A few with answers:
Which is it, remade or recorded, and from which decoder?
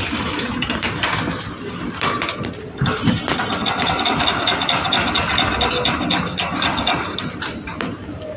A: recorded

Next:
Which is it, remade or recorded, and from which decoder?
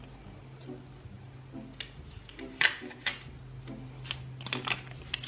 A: recorded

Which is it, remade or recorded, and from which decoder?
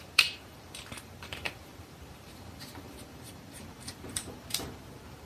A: remade, vocoder, BigVGAN v2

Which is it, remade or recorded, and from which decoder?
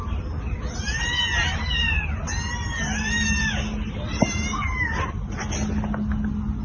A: recorded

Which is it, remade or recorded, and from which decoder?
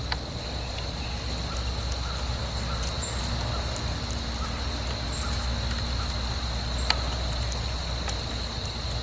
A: recorded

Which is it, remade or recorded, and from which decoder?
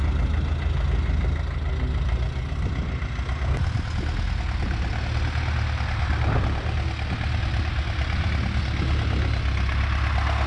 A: recorded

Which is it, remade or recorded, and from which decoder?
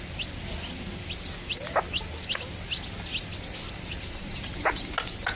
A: recorded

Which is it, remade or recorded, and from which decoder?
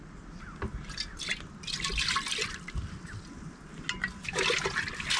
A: recorded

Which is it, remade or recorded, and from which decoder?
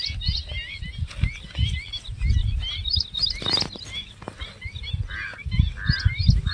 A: recorded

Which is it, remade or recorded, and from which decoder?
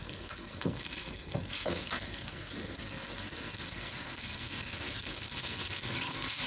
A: remade, codec, SNAC